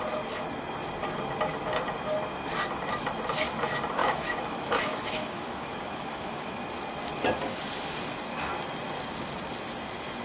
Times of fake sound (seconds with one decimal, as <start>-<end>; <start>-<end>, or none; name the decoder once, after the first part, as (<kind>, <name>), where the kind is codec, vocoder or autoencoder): 4.0-6.6 (autoencoder, DAC-VAE)